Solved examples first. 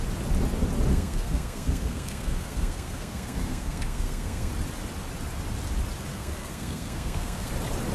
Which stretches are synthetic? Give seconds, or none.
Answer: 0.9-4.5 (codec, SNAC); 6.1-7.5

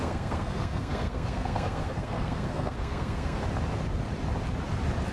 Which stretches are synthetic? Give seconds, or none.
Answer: 0.0-3.4 (codec, SNAC)